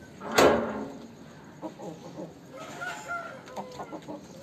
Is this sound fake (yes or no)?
no